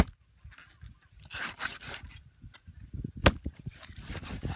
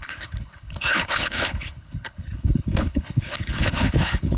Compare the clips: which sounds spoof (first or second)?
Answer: second